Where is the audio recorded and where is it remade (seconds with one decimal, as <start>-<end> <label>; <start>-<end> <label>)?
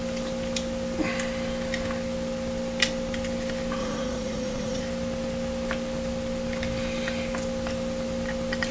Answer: 0.0-3.8 recorded; 3.8-4.8 remade; 4.8-8.7 recorded